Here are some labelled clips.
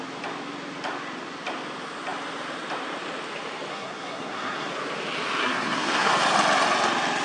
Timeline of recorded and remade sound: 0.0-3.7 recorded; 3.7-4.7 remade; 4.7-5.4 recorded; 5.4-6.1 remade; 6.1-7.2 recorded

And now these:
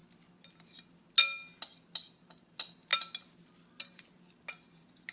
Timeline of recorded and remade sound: 0.0-5.1 recorded

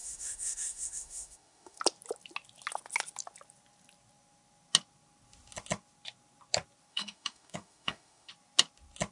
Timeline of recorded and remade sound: 0.0-1.8 remade; 1.8-6.9 recorded; 6.9-8.3 remade; 8.3-9.1 recorded

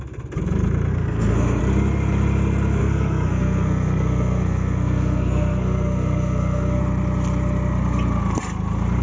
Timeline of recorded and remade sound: 0.0-0.9 recorded; 0.9-1.6 remade; 1.6-2.8 recorded; 2.8-6.8 remade; 6.8-9.0 recorded

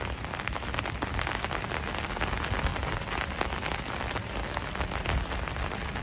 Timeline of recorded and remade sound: 0.0-6.0 recorded